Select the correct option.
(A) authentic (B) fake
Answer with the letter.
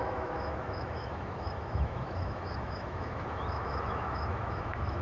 B